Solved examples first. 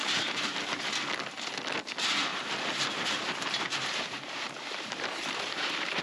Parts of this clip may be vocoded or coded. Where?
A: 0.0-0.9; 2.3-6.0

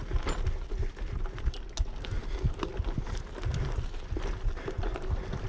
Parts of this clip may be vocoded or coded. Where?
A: none

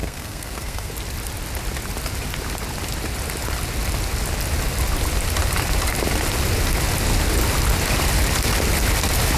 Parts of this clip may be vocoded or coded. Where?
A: 0.0-0.9

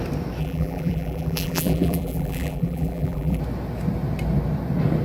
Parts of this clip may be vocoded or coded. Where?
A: 0.4-3.4

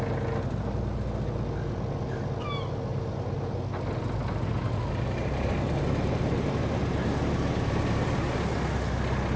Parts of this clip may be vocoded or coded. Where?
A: 2.9-3.6; 5.2-8.1

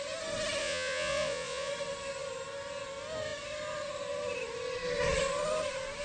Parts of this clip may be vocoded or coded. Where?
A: 0.6-1.7

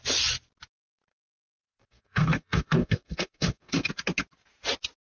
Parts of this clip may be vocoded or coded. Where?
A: 1.1-3.9

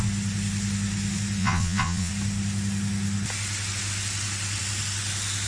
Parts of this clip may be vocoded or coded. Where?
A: 1.4-2.1